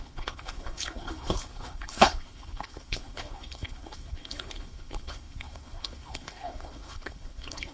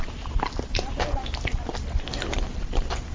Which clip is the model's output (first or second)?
first